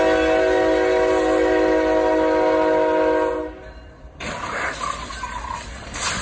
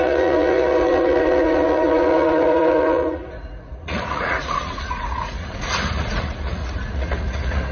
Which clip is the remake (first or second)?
second